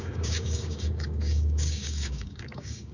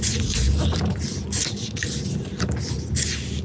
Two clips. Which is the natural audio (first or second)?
second